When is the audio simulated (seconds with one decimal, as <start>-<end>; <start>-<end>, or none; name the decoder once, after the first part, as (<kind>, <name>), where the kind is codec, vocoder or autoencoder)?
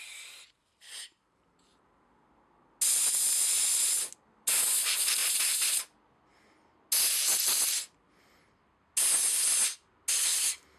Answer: none